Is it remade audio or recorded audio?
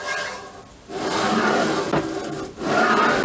recorded